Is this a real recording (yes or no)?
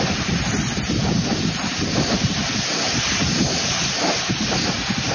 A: yes